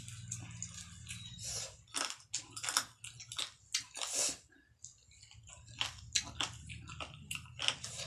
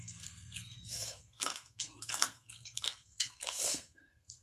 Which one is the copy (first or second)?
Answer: second